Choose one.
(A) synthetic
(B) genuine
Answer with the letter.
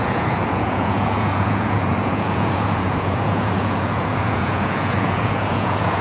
A